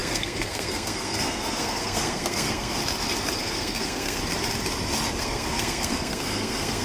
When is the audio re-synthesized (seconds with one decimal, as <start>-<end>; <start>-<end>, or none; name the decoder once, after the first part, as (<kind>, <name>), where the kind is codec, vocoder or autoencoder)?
0.0-2.8 (codec, SNAC); 3.4-4.2; 5.2-6.8